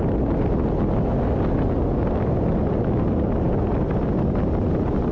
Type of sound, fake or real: real